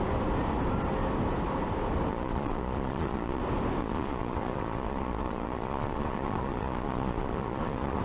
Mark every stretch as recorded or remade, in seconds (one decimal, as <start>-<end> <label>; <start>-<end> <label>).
0.0-2.1 recorded; 2.1-3.4 remade; 3.4-3.8 recorded; 3.8-8.0 remade